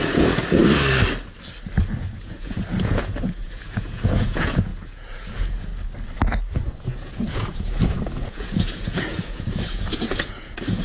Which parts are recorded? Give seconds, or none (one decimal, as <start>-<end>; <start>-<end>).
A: 0.6-2.0; 5.7-6.5